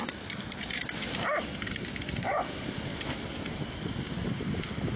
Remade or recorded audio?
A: recorded